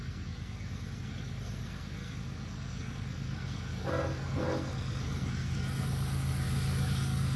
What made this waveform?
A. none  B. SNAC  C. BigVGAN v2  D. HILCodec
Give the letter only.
B